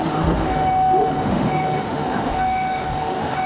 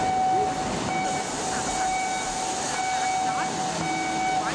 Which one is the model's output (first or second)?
first